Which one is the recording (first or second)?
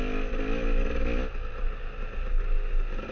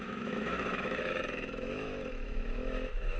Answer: first